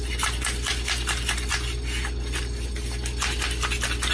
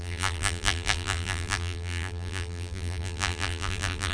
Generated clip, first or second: second